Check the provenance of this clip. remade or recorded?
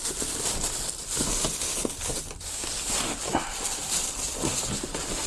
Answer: recorded